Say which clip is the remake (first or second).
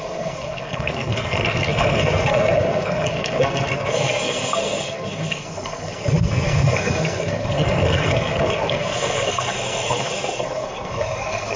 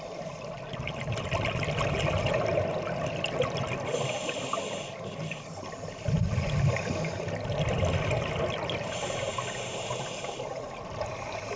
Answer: first